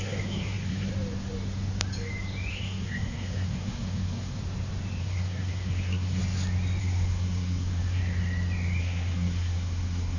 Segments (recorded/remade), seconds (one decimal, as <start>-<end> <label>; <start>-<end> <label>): 0.0-0.9 remade; 0.9-2.5 recorded; 2.5-4.4 remade; 4.4-5.0 recorded; 5.0-6.2 remade; 6.2-6.8 recorded; 6.8-8.0 remade; 8.0-8.8 recorded; 8.8-10.2 remade